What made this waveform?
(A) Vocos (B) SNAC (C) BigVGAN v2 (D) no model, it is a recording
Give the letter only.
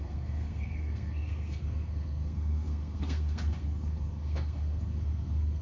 B